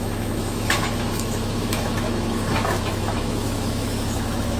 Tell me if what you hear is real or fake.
fake